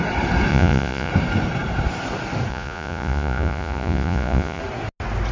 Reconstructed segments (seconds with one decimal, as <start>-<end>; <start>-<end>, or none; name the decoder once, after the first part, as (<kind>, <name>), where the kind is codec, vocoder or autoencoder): 0.5-1.1 (vocoder, Vocos); 2.5-4.6